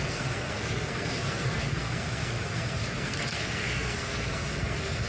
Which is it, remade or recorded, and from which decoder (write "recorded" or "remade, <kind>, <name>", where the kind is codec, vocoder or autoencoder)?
remade, codec, SNAC